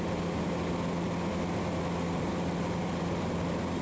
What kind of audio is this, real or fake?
real